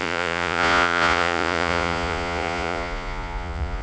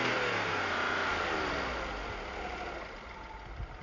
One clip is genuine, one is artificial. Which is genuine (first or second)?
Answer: second